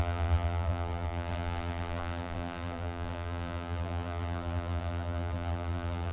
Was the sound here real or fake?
fake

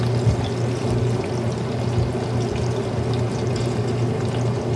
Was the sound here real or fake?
real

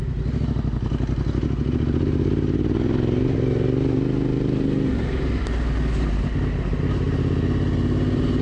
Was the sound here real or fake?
real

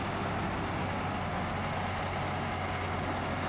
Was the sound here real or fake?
real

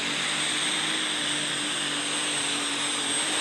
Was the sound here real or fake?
real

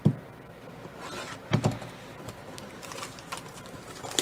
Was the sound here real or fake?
real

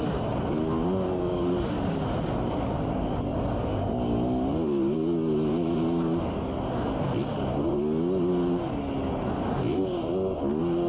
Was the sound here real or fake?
real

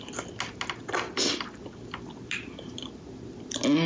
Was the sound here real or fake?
real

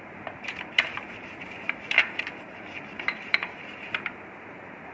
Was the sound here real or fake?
fake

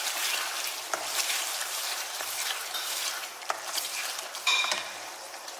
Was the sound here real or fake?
fake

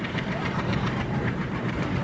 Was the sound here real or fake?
fake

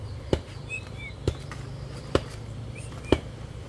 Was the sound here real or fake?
fake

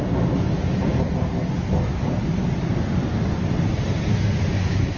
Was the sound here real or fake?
real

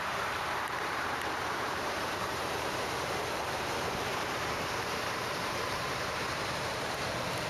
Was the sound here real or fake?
fake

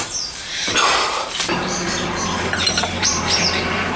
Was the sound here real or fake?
fake